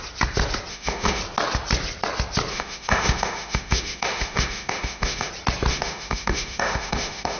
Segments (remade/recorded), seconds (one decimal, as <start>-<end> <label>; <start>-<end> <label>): 0.0-0.7 recorded; 0.7-1.2 remade; 1.2-2.5 recorded; 2.5-5.3 remade; 5.3-5.7 recorded; 5.7-7.4 remade